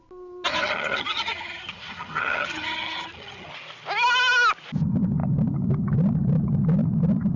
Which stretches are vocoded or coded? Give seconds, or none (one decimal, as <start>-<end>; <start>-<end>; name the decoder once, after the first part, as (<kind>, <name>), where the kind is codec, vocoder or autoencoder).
0.5-3.5 (vocoder, HiFi-GAN)